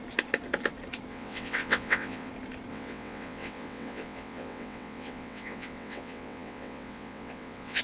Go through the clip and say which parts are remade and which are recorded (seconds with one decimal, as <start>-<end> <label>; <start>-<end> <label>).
0.0-1.1 recorded; 1.1-2.3 remade; 2.3-2.7 recorded; 2.7-7.8 remade